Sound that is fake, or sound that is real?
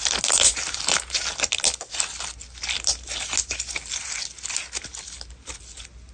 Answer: real